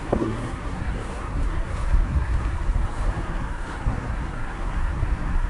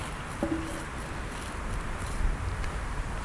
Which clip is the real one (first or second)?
second